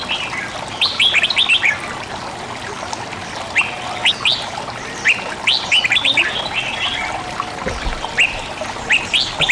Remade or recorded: recorded